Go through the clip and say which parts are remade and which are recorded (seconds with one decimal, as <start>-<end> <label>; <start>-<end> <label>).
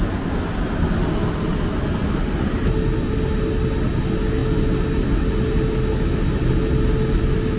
0.0-7.6 recorded